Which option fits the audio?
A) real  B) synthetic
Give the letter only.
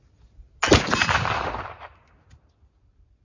A